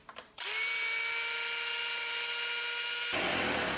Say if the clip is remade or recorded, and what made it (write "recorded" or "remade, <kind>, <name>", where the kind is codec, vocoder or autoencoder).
recorded